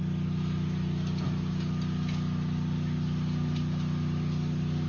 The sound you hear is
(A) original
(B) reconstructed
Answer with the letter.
A